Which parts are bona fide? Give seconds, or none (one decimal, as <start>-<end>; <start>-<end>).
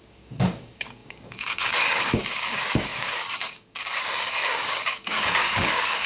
none